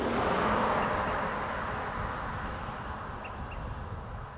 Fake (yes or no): no